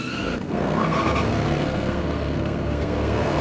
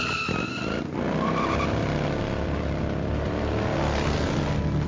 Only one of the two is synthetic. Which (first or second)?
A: first